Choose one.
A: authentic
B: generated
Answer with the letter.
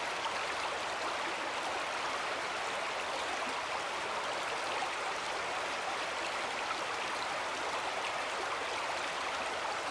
A